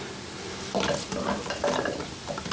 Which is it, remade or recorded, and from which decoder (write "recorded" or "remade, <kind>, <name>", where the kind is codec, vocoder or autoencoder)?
recorded